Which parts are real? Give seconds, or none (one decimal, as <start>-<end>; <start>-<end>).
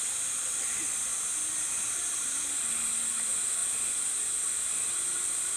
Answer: none